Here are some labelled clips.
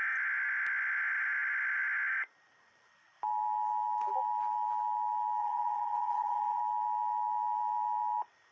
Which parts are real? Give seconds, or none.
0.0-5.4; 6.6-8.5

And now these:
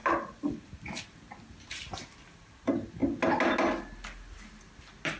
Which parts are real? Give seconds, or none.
0.0-5.2

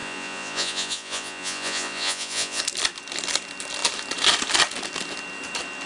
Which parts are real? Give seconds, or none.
2.6-5.9

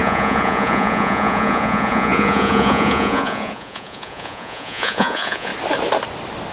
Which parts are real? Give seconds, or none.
5.5-6.5

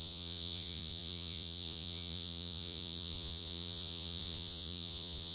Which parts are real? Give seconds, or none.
none

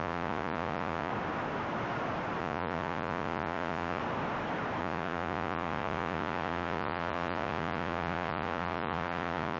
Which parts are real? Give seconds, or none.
1.1-2.4; 4.0-4.8